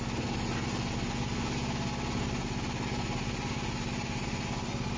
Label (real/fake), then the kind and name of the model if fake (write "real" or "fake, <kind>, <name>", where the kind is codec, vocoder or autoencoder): real